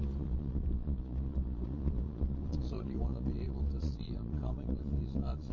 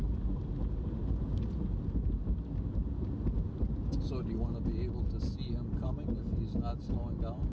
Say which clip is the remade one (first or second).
first